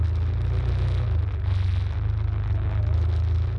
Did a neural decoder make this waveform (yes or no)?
no